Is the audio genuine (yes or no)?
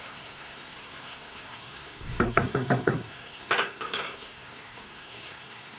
no